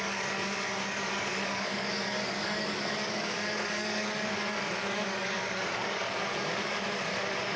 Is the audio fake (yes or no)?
yes